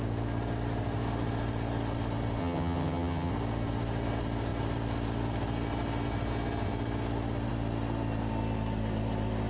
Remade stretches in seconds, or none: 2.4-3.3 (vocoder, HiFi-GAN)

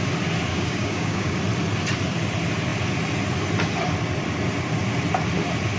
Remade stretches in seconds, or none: 0.5-1.4 (codec, DAC)

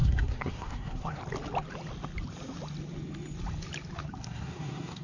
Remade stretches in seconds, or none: 0.0-1.2 (codec, SNAC); 4.2-5.0